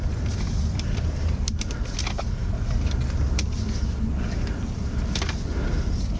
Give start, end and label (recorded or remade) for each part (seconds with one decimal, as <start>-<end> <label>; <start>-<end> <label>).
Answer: 0.0-6.2 recorded